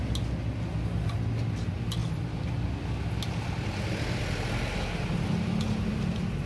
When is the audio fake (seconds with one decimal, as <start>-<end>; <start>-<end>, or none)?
none